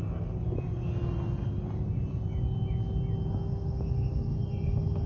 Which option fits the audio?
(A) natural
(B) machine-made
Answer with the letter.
A